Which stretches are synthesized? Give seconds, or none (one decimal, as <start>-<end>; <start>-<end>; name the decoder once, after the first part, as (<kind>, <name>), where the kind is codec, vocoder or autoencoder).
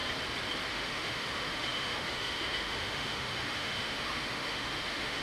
0.7-5.2 (autoencoder, DAC-VAE)